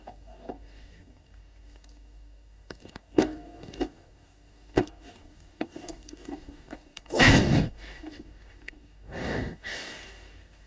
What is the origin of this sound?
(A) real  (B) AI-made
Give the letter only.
B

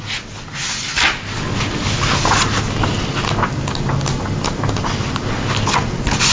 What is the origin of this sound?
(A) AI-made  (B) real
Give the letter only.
B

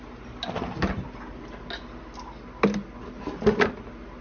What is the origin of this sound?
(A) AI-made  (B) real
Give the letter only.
B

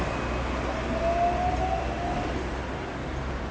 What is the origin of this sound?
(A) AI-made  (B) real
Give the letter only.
B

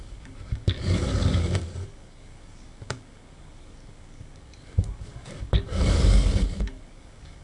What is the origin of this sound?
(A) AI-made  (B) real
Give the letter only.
A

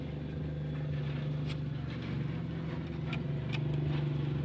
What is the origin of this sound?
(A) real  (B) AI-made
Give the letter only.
A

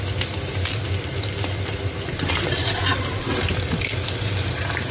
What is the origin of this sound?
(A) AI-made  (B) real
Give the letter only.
B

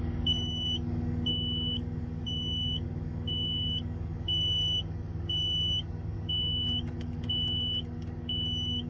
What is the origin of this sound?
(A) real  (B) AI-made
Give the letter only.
B